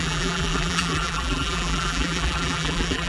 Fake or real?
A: fake